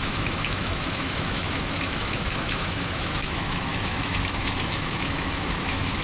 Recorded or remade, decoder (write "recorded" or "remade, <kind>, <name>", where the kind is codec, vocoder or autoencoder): remade, autoencoder, DAC-VAE